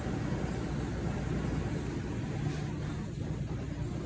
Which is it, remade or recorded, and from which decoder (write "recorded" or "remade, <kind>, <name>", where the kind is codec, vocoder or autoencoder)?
recorded